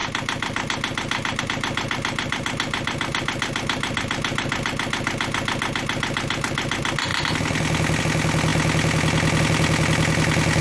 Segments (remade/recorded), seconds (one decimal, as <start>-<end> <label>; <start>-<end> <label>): 0.0-10.6 recorded